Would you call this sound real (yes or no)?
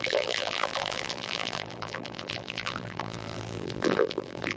no